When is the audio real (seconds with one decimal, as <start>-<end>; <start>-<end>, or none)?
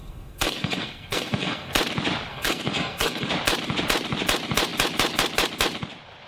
1.7-2.3; 3.3-6.3